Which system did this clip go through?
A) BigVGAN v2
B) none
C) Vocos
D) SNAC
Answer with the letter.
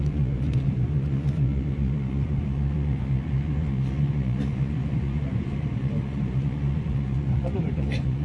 C